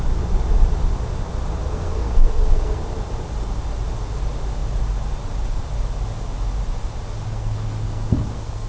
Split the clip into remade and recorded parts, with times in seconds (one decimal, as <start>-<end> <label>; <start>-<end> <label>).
0.0-1.7 recorded; 1.7-2.8 remade; 2.8-7.3 recorded; 7.3-8.7 remade